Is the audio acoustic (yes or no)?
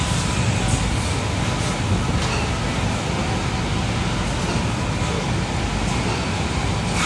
yes